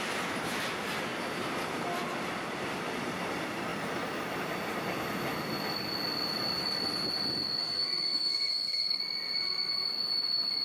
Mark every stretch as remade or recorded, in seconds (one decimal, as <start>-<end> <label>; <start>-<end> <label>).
0.0-7.6 recorded; 7.6-9.0 remade; 9.0-10.6 recorded